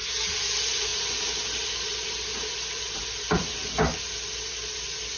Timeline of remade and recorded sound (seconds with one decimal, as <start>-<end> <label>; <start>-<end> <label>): 0.0-5.2 recorded